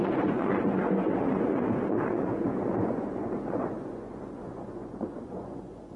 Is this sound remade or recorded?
remade